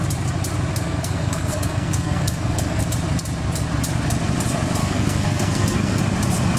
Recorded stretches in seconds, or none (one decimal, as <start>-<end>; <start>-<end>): 0.0-0.7; 2.8-4.8; 6.0-6.6